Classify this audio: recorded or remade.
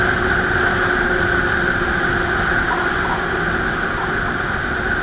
recorded